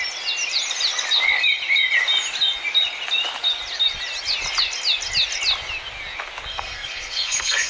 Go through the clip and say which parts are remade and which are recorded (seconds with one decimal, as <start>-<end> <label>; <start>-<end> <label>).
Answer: 0.0-6.5 recorded; 6.5-7.7 remade